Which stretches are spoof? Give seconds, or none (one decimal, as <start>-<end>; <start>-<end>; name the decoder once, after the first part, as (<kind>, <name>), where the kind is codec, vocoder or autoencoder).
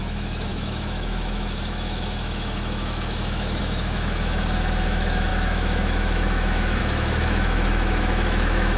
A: 0.0-8.8 (autoencoder, DAC-VAE)